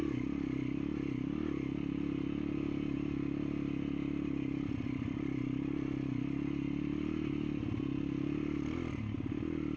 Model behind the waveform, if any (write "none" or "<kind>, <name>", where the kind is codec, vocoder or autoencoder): none